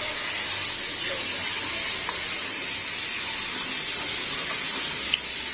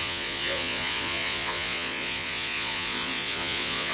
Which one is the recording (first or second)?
first